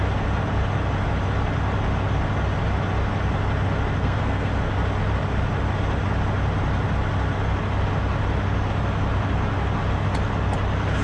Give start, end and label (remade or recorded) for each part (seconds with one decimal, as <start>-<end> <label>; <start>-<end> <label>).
0.0-4.0 recorded; 4.0-4.5 remade; 4.5-11.0 recorded